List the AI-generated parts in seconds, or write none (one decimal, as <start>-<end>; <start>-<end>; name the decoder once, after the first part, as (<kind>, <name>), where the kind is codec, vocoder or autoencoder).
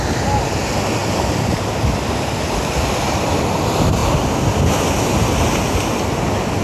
1.0-3.4 (vocoder, BigVGAN v2)